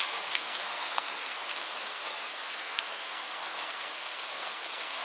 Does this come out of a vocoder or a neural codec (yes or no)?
yes